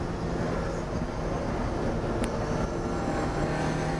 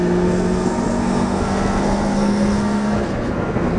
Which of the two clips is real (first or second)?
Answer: first